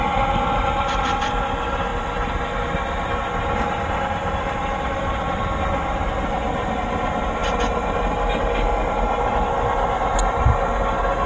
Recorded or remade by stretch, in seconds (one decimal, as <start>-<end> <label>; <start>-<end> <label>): 0.0-11.3 recorded